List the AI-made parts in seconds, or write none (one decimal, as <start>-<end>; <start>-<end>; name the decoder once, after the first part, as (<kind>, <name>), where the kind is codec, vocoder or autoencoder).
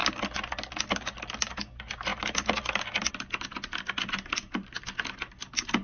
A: none